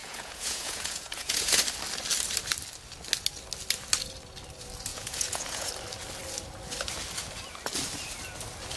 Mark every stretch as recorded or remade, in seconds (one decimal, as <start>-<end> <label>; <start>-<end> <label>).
0.0-1.6 remade; 1.6-4.9 recorded; 4.9-5.7 remade; 5.7-8.8 recorded